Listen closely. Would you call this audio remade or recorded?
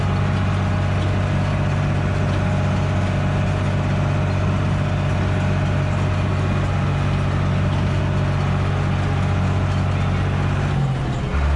recorded